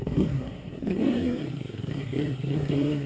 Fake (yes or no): yes